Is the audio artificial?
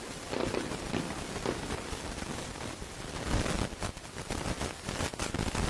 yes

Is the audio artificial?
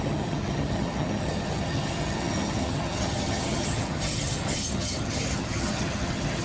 yes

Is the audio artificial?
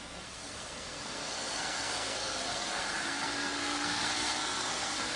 yes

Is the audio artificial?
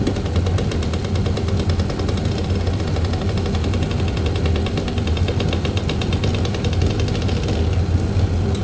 no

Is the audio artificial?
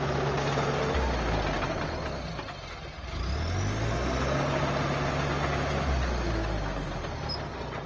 no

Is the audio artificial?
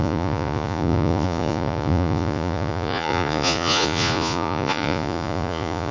yes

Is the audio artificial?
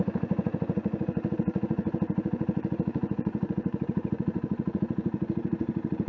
yes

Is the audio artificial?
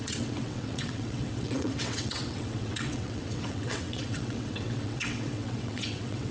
yes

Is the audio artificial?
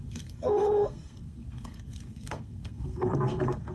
yes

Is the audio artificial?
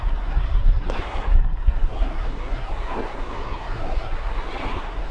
yes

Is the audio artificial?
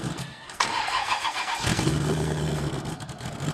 yes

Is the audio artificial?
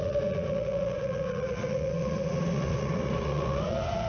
yes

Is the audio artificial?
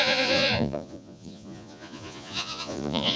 yes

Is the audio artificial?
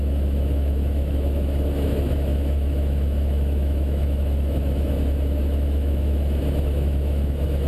yes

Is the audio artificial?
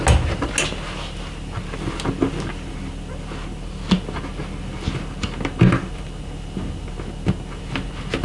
no